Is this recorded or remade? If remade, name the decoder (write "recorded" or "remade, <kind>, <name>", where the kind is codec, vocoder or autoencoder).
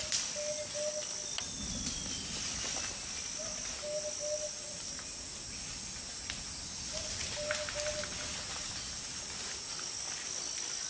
recorded